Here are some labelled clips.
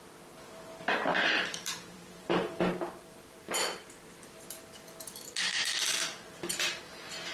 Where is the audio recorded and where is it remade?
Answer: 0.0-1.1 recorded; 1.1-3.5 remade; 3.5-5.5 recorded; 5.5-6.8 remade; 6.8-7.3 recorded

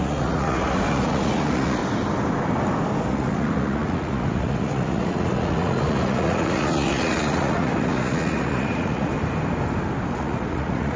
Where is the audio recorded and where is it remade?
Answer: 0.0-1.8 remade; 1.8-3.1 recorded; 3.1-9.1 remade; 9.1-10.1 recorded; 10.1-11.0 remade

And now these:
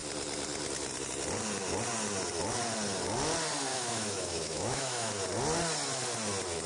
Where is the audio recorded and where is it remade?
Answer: 0.0-3.7 recorded; 3.7-5.1 remade; 5.1-6.7 recorded

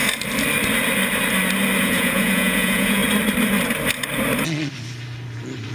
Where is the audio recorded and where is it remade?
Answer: 0.0-1.8 recorded; 1.8-3.0 remade; 3.0-5.7 recorded